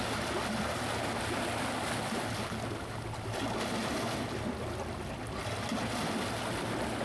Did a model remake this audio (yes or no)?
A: no